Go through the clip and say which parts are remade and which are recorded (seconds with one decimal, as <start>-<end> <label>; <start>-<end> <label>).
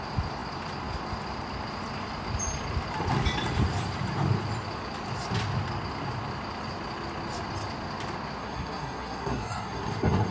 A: 0.0-8.4 recorded; 8.4-10.3 remade